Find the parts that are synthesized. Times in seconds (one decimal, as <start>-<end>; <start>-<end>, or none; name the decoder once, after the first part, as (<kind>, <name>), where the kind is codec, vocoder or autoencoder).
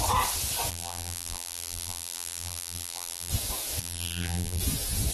0.7-3.3 (vocoder, BigVGAN v2); 3.8-4.6